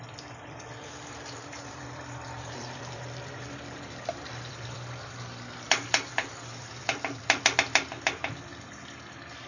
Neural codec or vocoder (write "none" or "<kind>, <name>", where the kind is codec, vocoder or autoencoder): vocoder, BigVGAN v2